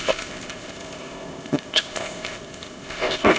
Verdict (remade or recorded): remade